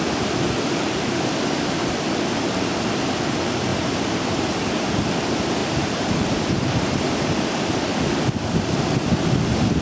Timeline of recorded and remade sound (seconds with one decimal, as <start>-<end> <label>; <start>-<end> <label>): 0.0-3.7 recorded; 3.7-4.9 remade; 4.9-5.6 recorded; 5.6-7.9 remade; 7.9-9.8 recorded